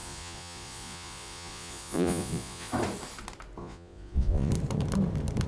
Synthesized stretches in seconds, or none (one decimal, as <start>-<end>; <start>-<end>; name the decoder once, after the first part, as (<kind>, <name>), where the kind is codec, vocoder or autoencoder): 0.0-2.7 (vocoder, Vocos); 3.6-4.5